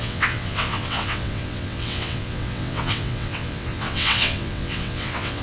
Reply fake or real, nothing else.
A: fake